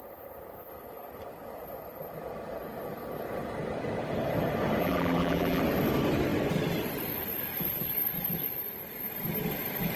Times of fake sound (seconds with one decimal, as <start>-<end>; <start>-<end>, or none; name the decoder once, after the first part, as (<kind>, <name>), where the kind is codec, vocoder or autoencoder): 4.8-5.6 (vocoder, BigVGAN v2)